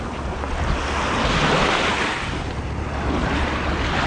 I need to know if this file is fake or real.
real